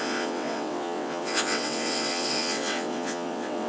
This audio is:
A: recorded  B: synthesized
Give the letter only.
B